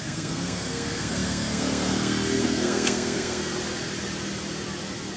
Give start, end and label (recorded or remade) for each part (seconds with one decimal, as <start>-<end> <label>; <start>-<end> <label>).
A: 0.0-3.5 remade; 3.5-5.2 recorded